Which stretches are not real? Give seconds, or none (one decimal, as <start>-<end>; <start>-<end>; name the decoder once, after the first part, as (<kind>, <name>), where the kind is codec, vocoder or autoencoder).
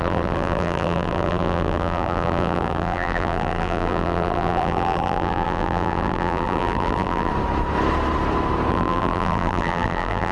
0.0-7.3 (vocoder, BigVGAN v2); 8.7-10.3